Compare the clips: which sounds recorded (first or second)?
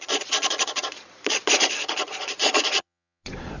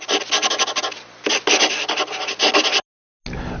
second